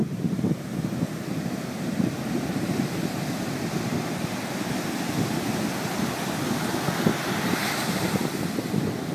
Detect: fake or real real